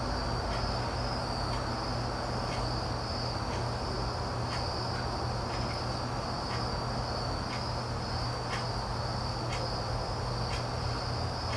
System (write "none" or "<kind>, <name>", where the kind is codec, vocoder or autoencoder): none